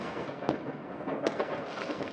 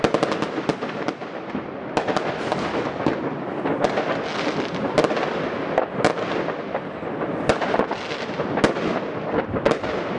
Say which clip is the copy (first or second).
first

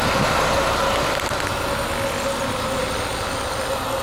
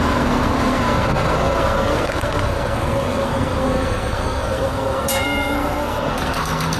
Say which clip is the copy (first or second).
second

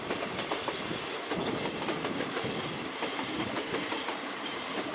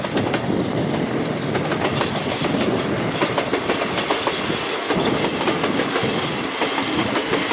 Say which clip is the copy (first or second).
first